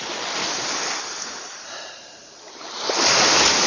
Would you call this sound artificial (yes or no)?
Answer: no